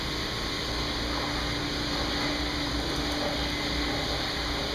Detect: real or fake real